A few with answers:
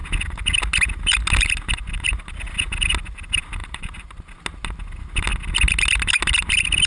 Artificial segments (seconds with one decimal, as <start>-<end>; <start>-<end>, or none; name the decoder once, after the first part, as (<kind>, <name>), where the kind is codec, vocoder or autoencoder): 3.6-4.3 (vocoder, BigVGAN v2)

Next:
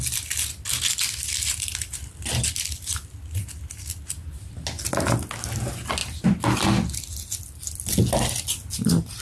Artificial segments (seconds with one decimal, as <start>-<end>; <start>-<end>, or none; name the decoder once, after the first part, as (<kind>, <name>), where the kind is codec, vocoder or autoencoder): none

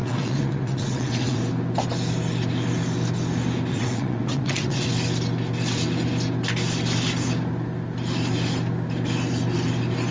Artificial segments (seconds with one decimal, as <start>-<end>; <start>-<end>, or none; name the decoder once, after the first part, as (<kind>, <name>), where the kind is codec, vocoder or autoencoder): 0.0-1.4 (vocoder, WaveNeXt); 3.7-4.9

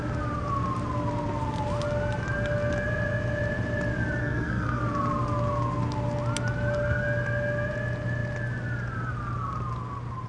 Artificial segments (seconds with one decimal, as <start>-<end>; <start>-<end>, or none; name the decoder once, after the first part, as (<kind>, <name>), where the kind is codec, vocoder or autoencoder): 4.2-4.8 (codec, SNAC)